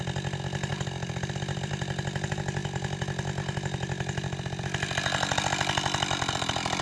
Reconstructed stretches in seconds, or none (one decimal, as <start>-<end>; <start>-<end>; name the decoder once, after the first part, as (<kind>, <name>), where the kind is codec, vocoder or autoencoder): 0.7-1.7 (vocoder, BigVGAN v2)